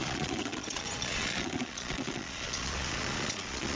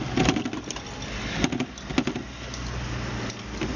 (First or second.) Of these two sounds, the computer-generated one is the first